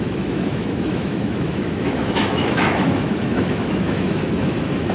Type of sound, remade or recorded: remade